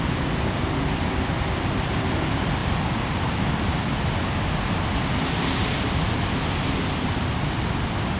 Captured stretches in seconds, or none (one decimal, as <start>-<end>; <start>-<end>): 0.0-8.2